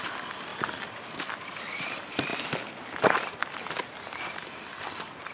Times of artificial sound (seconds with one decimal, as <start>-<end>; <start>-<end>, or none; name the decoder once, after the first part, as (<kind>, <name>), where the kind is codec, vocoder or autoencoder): none